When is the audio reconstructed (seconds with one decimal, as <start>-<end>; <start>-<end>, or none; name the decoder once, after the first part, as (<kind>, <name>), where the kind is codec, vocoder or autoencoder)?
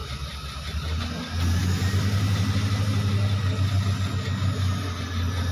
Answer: none